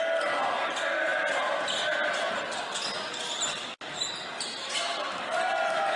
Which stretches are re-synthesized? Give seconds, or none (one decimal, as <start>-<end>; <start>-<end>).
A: none